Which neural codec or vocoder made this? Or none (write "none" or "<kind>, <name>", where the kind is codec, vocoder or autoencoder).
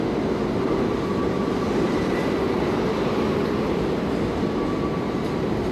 none